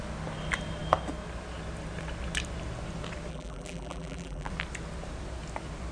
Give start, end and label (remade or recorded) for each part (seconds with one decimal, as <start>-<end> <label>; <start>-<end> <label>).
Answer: 0.0-3.3 recorded; 3.3-4.5 remade; 4.5-5.9 recorded